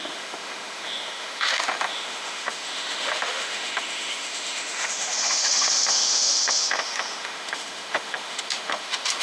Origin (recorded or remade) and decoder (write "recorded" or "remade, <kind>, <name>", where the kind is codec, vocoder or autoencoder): remade, autoencoder, DAC-VAE